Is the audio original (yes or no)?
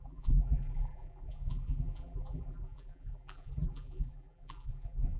no